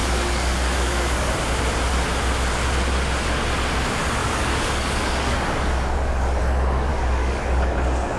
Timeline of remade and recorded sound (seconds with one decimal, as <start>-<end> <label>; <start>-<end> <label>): 0.0-1.3 remade; 1.3-4.2 recorded; 4.2-6.4 remade; 6.4-6.9 recorded; 6.9-8.2 remade